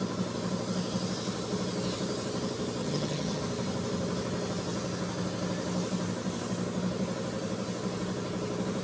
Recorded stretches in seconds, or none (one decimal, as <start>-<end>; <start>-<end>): 0.0-2.8; 3.4-8.8